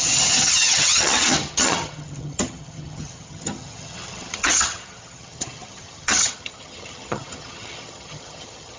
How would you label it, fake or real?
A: fake